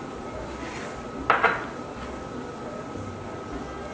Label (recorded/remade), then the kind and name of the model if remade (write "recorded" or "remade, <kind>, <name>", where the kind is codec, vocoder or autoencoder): recorded